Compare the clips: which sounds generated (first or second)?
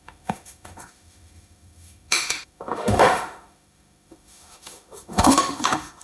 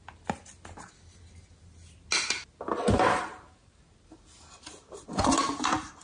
first